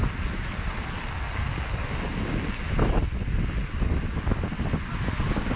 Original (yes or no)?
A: yes